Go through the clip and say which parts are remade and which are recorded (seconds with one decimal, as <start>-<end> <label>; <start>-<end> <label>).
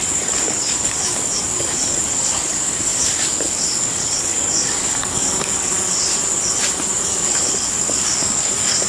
0.0-6.1 remade; 6.1-7.0 recorded; 7.0-8.9 remade